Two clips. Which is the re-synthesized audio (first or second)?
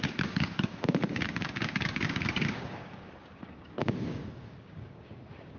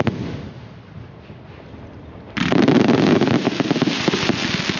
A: first